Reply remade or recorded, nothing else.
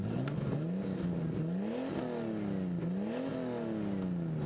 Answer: recorded